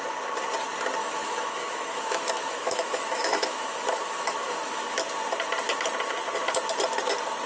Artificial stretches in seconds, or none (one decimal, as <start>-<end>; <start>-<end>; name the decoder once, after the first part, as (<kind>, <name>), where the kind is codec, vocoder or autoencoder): 1.0-5.0 (autoencoder, DAC-VAE)